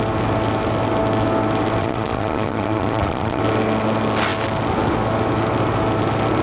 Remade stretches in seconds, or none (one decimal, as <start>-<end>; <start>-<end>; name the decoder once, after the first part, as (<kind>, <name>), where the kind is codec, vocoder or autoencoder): 1.8-3.4 (vocoder, Vocos)